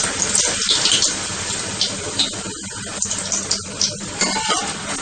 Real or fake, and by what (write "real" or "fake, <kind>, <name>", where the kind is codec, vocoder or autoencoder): real